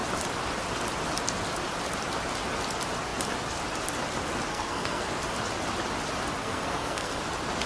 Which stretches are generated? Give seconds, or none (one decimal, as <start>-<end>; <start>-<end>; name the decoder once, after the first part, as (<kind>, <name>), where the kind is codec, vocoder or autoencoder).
4.5-5.1 (codec, SNAC); 6.4-7.2